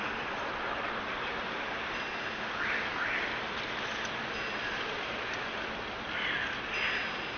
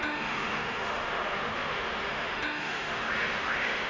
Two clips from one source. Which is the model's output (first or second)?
second